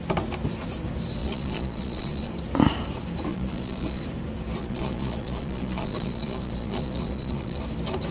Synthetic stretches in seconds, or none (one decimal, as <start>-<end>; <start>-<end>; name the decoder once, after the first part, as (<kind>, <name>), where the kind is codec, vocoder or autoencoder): 1.2-2.3 (vocoder, Vocos); 3.3-4.0; 4.6-7.6